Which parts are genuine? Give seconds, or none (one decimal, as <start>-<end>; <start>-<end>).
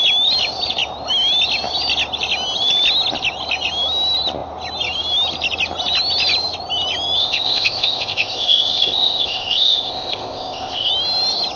0.0-7.2; 10.9-11.6